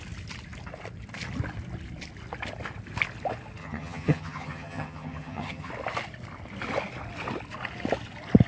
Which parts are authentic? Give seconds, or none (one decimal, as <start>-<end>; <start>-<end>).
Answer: 0.0-3.6; 5.7-8.5